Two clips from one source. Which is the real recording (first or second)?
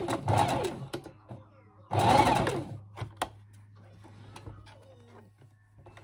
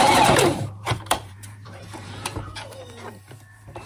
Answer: first